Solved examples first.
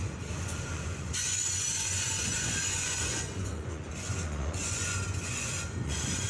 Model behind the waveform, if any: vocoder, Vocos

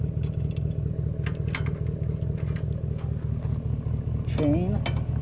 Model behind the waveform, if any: none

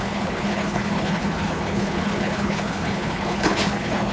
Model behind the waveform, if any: codec, HILCodec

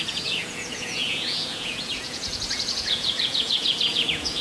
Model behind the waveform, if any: vocoder, Vocos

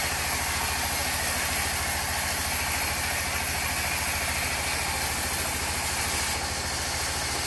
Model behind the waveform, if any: none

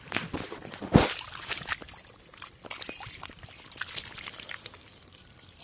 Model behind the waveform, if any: vocoder, BigVGAN v2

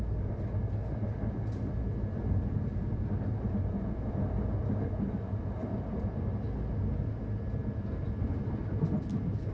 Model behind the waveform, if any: none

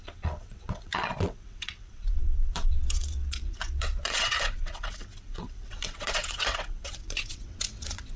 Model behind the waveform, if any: vocoder, WaveNeXt